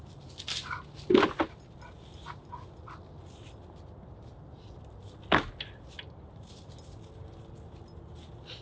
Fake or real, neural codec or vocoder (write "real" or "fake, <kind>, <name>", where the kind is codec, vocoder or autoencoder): real